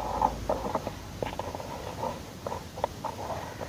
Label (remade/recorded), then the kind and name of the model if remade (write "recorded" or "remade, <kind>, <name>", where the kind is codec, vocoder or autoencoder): recorded